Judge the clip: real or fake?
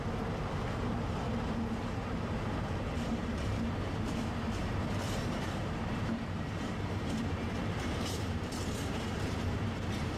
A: fake